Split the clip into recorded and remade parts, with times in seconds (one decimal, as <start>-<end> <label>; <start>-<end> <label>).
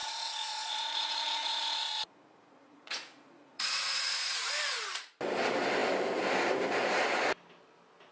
0.0-4.5 remade; 4.5-8.1 recorded